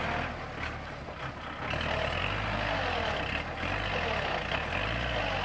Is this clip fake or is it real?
real